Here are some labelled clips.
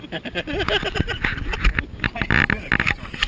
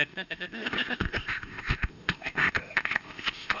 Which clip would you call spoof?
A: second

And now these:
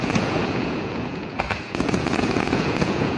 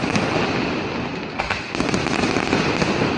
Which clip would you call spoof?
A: first